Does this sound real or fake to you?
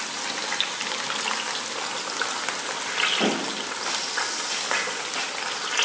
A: real